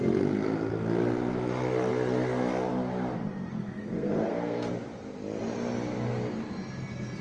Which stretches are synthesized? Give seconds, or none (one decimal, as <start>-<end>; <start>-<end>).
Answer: 3.5-4.7